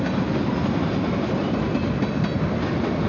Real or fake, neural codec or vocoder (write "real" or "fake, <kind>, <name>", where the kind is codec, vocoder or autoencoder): real